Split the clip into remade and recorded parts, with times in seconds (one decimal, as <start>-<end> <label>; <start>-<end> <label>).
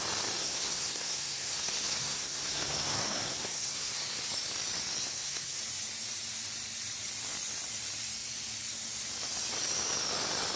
0.0-0.4 recorded; 0.4-4.2 remade; 4.2-5.0 recorded; 5.0-5.6 remade; 5.6-10.6 recorded